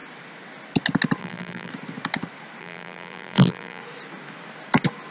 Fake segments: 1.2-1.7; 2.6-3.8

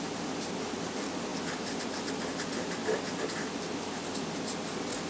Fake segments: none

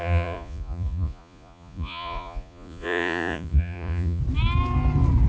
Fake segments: 0.0-4.2

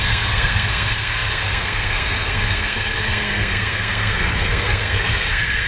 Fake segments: 0.0-5.7

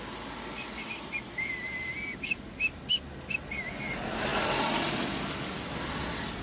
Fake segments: none

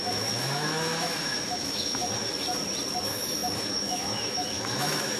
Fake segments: 0.0-2.0; 3.0-5.2

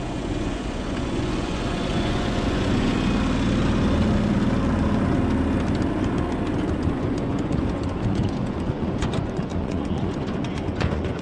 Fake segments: 0.0-2.9; 6.7-11.2